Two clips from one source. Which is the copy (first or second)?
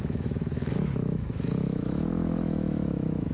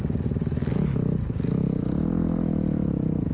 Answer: first